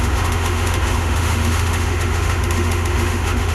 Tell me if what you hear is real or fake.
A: fake